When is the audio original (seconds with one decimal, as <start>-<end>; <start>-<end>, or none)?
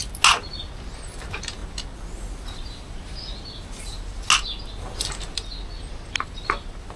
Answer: 0.0-7.0